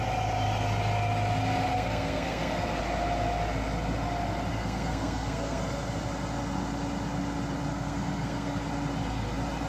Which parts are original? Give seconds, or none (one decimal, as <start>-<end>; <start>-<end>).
0.0-1.7; 2.8-4.6; 5.6-7.7; 8.6-9.7